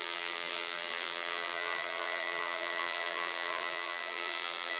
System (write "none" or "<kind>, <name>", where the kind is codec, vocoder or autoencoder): vocoder, BigVGAN v2